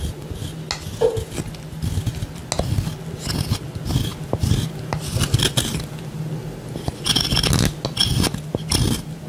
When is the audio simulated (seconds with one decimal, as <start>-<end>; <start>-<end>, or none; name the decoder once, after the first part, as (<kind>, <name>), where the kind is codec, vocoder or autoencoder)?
none

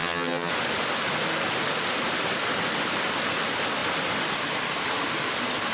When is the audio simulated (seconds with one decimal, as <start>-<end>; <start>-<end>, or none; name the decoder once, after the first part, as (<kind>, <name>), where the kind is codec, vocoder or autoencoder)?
0.0-0.5 (vocoder, HiFi-GAN)

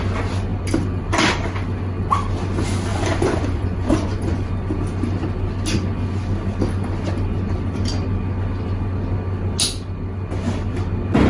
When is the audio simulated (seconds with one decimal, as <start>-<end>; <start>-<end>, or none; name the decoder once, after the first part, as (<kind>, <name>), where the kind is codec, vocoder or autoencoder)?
2.9-4.5 (vocoder, Vocos)

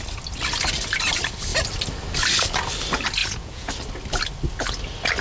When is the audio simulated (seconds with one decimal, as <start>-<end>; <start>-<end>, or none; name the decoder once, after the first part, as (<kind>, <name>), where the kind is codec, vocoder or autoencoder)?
3.2-3.7 (vocoder, Vocos)